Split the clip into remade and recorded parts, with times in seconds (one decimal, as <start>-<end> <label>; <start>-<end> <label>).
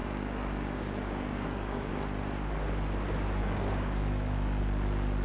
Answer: 0.0-1.9 remade; 1.9-3.4 recorded; 3.4-4.6 remade; 4.6-5.2 recorded